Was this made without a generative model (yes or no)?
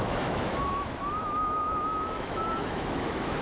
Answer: no